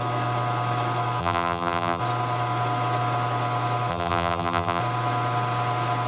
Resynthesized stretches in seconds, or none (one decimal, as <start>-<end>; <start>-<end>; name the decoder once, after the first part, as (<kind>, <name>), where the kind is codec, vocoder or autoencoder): 1.2-2.0 (vocoder, BigVGAN v2); 3.9-4.8

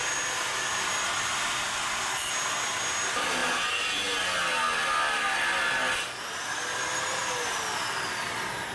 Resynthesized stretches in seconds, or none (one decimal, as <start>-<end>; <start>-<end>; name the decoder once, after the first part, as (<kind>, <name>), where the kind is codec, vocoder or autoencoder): none

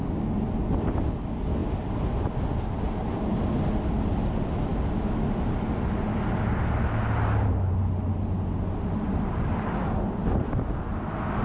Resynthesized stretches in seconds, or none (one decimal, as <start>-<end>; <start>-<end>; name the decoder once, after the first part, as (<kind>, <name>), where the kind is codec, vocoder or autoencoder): none

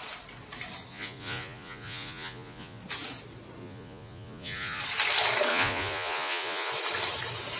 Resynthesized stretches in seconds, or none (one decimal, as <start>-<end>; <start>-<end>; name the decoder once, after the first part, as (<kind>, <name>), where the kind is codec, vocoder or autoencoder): 0.9-2.8 (vocoder, Vocos); 3.6-4.8; 5.5-6.7